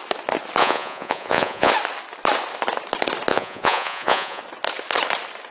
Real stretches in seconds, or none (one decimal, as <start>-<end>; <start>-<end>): 0.0-0.6; 1.7-3.3; 4.4-5.5